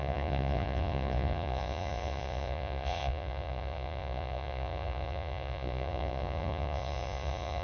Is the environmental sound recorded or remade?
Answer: remade